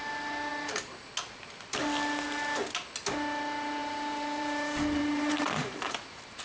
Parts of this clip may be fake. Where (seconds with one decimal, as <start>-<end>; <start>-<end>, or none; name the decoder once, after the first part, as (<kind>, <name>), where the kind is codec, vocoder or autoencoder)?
0.5-1.1 (vocoder, BigVGAN v2); 3.8-6.4